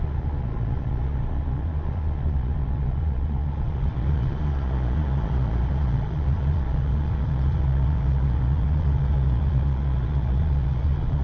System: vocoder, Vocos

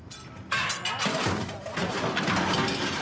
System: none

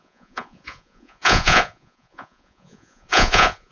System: vocoder, Vocos